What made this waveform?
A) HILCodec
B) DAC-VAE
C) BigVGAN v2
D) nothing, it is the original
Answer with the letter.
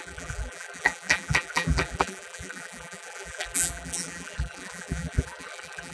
C